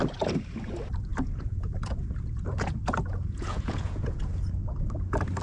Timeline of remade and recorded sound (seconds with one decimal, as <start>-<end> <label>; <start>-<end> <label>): 0.0-1.1 recorded; 1.1-4.3 remade; 4.3-5.4 recorded